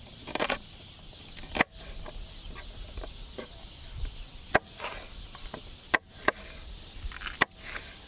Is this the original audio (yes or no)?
yes